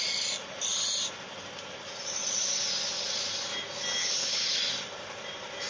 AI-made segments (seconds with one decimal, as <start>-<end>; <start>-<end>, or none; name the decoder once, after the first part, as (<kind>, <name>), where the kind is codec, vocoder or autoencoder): 4.0-4.6 (codec, HILCodec)